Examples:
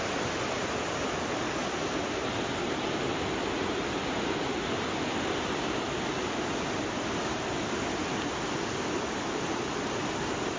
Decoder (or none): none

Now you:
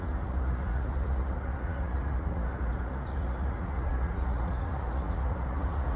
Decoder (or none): vocoder, Vocos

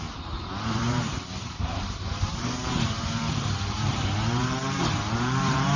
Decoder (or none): vocoder, BigVGAN v2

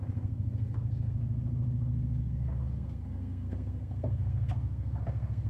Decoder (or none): codec, SNAC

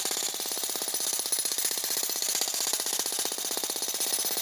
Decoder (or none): vocoder, BigVGAN v2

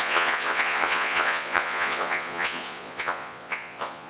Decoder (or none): vocoder, Vocos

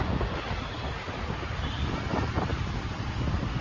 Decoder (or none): vocoder, BigVGAN v2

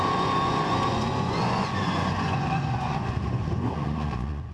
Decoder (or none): vocoder, Vocos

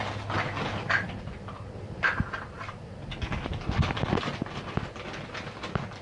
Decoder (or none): none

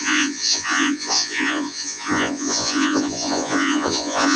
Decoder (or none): vocoder, Vocos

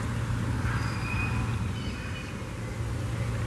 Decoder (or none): none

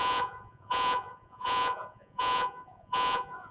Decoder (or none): vocoder, Vocos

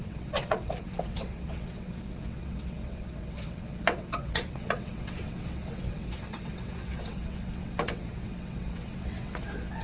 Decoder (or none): vocoder, WaveNeXt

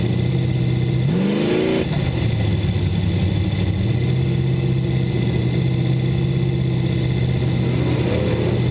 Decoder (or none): none